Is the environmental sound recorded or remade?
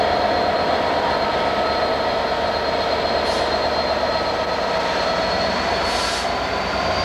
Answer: recorded